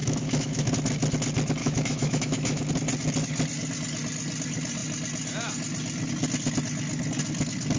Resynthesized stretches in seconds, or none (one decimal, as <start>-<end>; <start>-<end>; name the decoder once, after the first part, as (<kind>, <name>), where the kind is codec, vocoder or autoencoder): 0.0-0.7 (autoencoder, DAC-VAE); 1.6-2.7